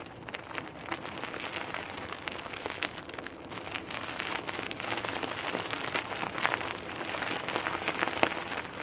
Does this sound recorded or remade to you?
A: recorded